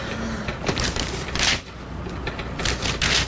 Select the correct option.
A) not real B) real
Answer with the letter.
B